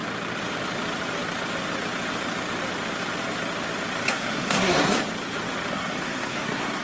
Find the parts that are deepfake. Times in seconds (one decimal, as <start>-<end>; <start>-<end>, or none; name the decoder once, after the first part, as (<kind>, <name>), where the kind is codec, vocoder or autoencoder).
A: 4.1-5.0 (codec, SNAC); 5.7-6.8